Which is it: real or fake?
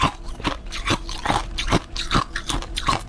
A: real